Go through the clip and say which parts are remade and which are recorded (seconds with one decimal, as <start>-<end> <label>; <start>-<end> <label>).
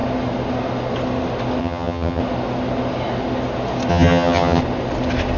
0.0-1.6 recorded; 1.6-2.2 remade; 2.2-3.9 recorded; 3.9-4.6 remade; 4.6-5.4 recorded